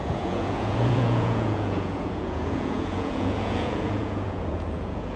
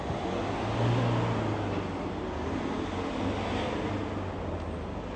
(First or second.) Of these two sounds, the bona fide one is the second